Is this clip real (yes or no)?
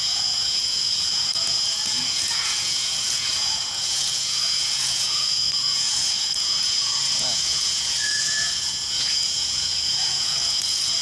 no